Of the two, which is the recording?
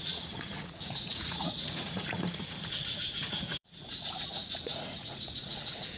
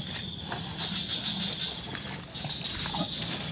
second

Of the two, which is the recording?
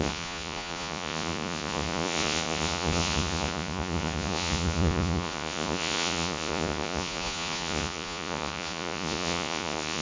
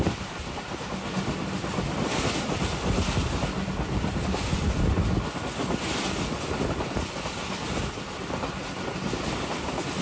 second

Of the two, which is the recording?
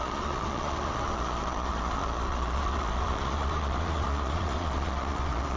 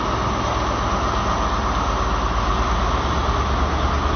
second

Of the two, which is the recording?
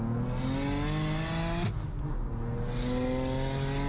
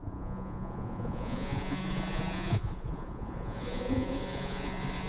first